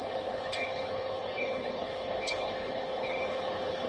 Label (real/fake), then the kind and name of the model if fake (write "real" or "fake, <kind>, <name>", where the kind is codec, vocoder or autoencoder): fake, codec, HILCodec